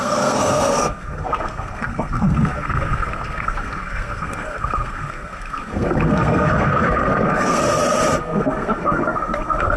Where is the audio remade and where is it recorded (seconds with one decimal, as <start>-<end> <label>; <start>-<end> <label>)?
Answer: 0.0-7.6 remade; 7.6-8.2 recorded; 8.2-9.8 remade